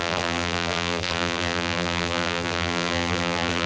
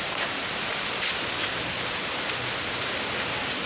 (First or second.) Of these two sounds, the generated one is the first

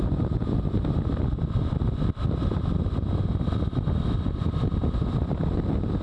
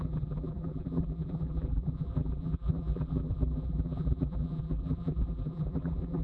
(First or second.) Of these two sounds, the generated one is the second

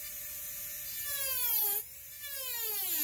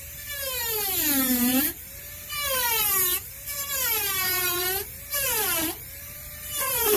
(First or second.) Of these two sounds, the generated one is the second